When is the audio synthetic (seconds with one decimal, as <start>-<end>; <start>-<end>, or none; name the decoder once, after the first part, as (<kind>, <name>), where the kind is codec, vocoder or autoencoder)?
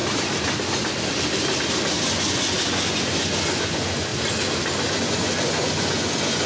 2.0-4.1 (vocoder, Vocos); 4.9-6.5